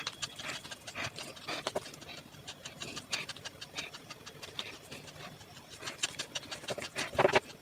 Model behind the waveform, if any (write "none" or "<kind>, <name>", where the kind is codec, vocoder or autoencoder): none